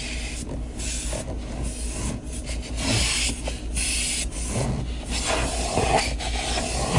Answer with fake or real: real